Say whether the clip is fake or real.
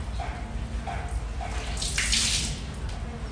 real